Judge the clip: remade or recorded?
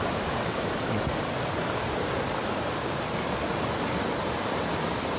recorded